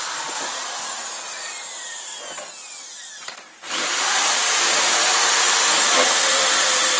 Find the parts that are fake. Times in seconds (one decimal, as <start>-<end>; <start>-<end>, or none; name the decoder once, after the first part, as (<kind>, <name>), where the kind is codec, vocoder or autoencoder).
0.0-2.1 (vocoder, BigVGAN v2); 2.9-7.0